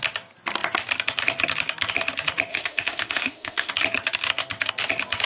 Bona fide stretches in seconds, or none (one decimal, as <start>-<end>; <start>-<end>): 0.0-2.5; 3.7-5.3